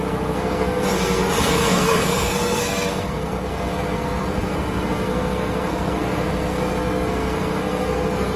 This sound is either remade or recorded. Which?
remade